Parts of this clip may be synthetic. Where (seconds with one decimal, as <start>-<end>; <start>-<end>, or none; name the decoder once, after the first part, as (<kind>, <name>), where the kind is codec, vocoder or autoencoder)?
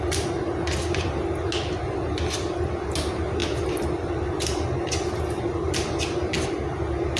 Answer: none